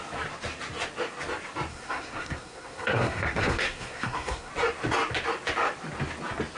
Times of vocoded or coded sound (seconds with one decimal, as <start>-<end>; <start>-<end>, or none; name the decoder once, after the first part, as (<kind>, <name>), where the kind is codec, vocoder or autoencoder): 1.7-4.5 (codec, SNAC)